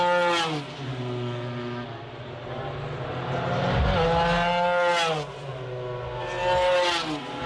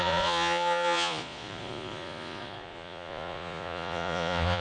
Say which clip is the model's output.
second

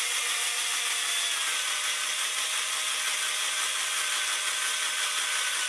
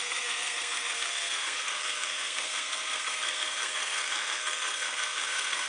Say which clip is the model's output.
second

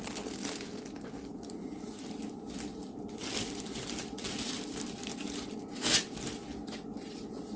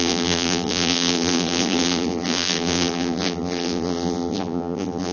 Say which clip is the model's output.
second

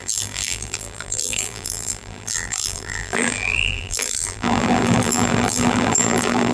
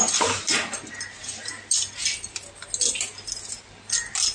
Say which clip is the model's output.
first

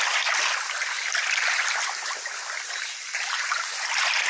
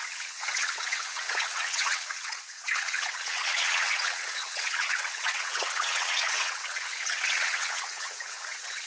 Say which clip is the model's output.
second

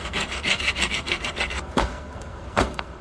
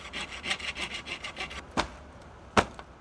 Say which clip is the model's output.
first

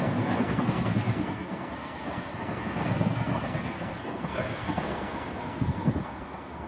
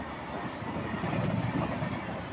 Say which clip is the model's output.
first